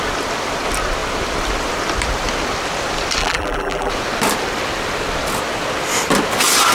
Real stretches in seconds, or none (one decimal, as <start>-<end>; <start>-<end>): 0.0-3.2; 3.9-6.7